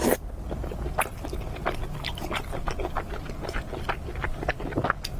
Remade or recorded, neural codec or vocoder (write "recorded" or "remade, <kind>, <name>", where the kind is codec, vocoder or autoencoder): recorded